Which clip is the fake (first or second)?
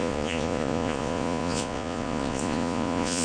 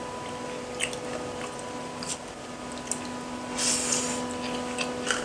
first